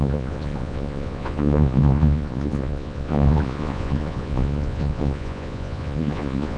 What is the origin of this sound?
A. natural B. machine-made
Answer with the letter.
B